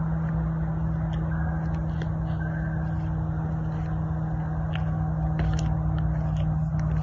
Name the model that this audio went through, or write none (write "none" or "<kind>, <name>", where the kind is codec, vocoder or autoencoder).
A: none